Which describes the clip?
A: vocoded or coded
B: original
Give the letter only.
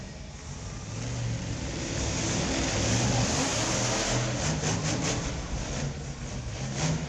B